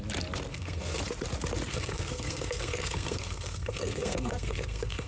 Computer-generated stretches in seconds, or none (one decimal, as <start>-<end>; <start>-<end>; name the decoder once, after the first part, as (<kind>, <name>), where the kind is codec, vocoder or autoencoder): 0.5-1.0 (codec, SNAC); 1.7-5.1